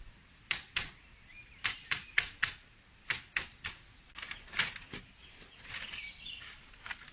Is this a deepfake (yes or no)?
no